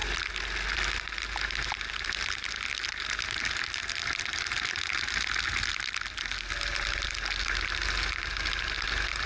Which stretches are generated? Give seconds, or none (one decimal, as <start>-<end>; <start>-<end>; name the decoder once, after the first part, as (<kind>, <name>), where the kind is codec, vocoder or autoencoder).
none